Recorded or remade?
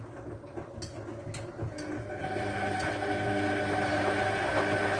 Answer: recorded